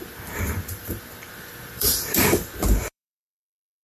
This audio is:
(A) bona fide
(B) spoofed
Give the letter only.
B